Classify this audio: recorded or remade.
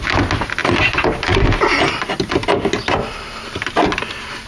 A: recorded